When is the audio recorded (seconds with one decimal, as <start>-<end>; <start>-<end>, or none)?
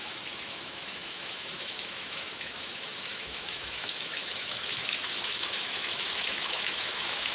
none